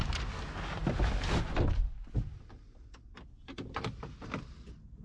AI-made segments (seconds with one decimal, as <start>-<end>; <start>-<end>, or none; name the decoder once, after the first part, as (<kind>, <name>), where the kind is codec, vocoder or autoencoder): none